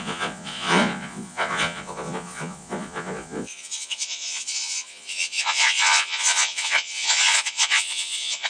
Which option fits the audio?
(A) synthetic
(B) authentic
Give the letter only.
A